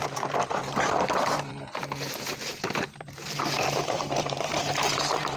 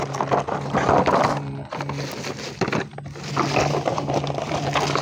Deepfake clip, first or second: first